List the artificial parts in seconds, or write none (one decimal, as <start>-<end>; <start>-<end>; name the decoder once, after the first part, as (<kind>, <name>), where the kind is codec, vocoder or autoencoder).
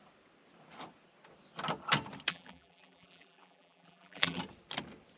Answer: 2.3-4.4 (vocoder, BigVGAN v2)